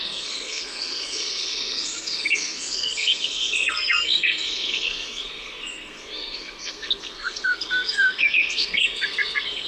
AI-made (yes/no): yes